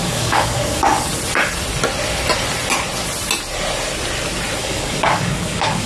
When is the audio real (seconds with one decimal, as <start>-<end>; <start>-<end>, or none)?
1.1-4.6

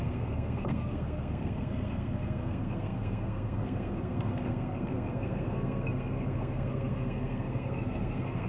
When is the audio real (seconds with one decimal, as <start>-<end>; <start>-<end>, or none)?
none